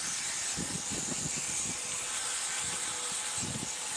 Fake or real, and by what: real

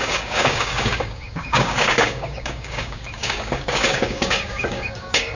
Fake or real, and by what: fake, codec, DAC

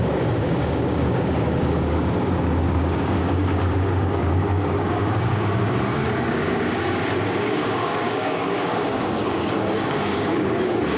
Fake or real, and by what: fake, codec, DAC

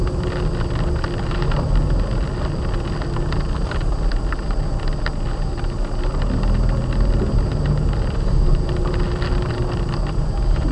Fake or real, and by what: real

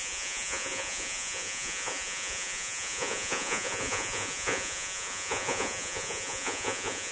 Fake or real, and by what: fake, vocoder, Vocos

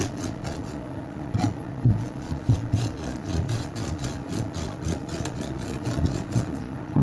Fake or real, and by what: fake, vocoder, Vocos